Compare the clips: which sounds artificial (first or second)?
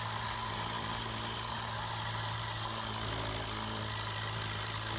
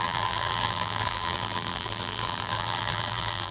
second